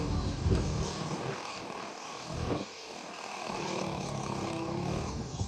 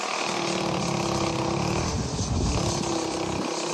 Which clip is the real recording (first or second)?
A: second